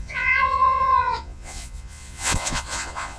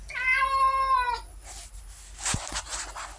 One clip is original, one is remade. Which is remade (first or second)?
first